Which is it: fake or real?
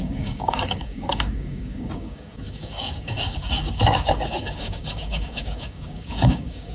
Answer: fake